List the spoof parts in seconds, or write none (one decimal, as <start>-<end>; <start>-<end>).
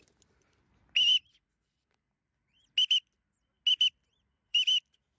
1.1-2.4; 4.5-5.2